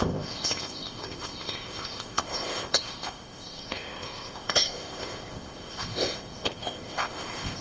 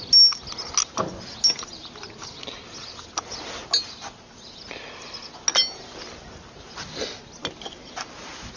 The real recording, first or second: second